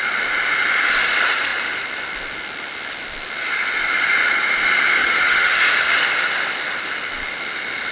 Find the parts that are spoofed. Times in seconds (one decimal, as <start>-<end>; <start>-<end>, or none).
5.0-5.6